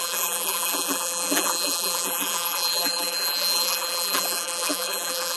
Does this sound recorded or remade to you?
remade